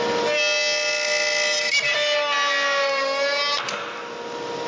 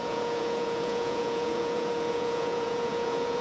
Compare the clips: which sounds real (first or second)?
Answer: first